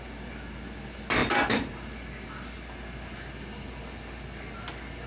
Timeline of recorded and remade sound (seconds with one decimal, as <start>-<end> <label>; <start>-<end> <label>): 0.0-5.1 recorded

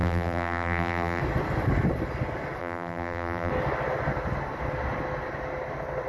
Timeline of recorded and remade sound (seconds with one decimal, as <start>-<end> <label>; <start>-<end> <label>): 0.0-1.2 remade; 1.2-2.6 recorded; 2.6-3.5 remade; 3.5-6.1 recorded

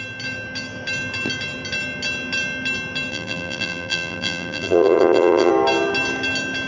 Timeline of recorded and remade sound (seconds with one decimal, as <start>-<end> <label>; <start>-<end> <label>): 0.0-3.1 recorded; 3.1-5.5 remade; 5.5-6.7 recorded

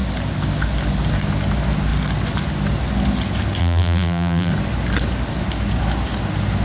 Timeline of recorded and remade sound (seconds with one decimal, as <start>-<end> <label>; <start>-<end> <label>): 0.0-3.6 recorded; 3.6-4.5 remade; 4.5-6.6 recorded

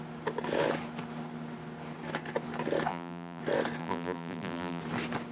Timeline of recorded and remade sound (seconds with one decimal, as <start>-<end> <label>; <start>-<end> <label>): 0.0-2.9 recorded; 2.9-3.4 remade; 3.4-3.8 recorded; 3.8-4.8 remade; 4.8-5.3 recorded

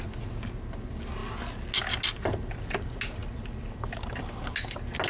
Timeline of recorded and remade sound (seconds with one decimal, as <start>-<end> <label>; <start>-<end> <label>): 0.0-5.1 recorded